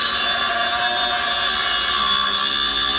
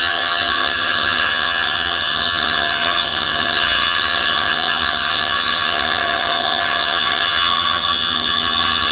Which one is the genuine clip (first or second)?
first